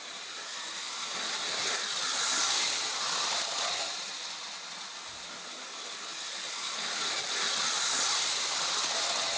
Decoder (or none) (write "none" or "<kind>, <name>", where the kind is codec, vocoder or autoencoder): none